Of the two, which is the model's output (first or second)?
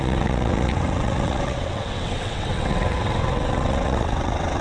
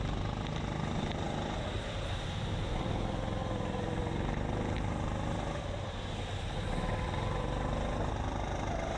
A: first